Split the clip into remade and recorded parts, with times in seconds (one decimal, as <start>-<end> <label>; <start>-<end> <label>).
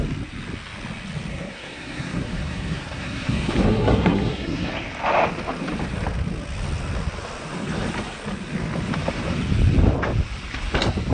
0.0-1.3 recorded; 1.3-4.7 remade; 4.7-11.1 recorded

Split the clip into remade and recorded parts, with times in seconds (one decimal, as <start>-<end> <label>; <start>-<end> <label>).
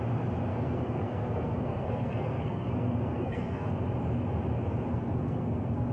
0.0-0.5 recorded; 0.5-3.7 remade; 3.7-4.9 recorded; 4.9-5.9 remade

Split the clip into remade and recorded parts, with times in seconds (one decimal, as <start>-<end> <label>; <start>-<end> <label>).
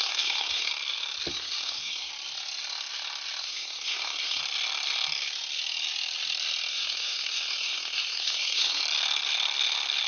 0.0-0.7 remade; 0.7-1.3 recorded; 1.3-2.1 remade; 2.1-3.4 recorded; 3.4-4.4 remade; 4.4-6.7 recorded; 6.7-8.8 remade; 8.8-10.1 recorded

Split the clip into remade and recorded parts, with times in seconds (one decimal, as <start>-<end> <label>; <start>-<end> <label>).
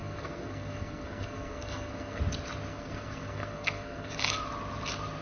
0.0-2.2 remade; 2.2-2.7 recorded; 2.7-4.1 remade; 4.1-5.2 recorded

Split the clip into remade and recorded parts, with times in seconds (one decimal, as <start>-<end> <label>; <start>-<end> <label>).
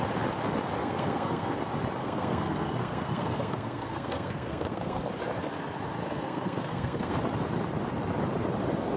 0.0-0.8 recorded; 0.8-1.6 remade; 1.6-2.0 recorded; 2.0-5.0 remade; 5.0-6.0 recorded; 6.0-7.2 remade; 7.2-9.0 recorded